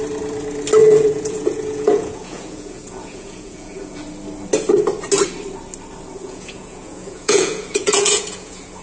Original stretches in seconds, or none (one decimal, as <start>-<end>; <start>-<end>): 0.0-0.8; 4.0-6.2